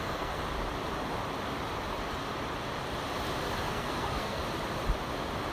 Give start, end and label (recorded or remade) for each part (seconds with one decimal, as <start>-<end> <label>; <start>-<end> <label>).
0.0-0.4 remade; 0.4-3.7 recorded; 3.7-4.4 remade; 4.4-5.5 recorded